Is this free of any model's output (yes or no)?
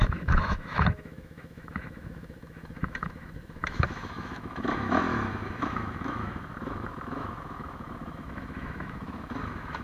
no